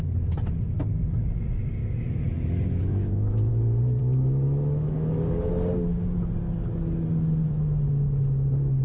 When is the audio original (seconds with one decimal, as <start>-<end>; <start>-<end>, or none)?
0.0-1.8; 3.5-4.0; 5.5-8.8